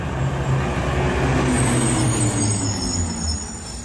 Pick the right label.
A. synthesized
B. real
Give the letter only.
B